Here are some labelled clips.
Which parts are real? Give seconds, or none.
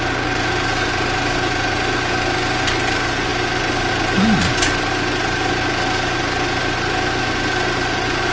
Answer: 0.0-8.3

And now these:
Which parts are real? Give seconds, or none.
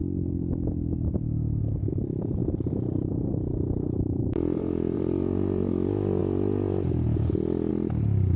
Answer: 0.0-2.4; 5.7-8.4